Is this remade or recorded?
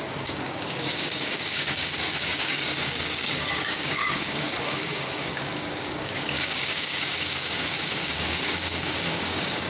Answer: remade